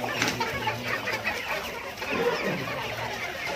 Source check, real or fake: real